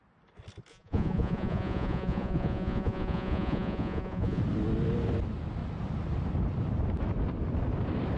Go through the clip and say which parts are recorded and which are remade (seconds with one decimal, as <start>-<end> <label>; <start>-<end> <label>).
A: 0.0-0.7 recorded; 0.7-4.4 remade; 4.4-8.2 recorded